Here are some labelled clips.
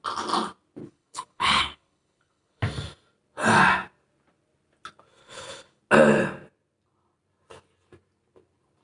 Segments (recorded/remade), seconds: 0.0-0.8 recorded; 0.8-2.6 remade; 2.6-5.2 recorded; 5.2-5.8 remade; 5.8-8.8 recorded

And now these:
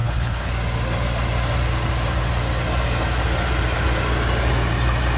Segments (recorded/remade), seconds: 0.0-0.5 remade; 0.5-5.2 recorded